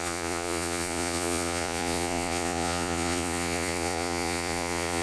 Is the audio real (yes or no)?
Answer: no